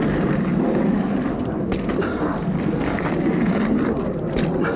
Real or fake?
real